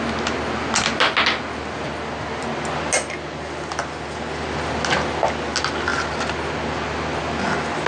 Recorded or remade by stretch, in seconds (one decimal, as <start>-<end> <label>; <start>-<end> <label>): 0.0-7.9 recorded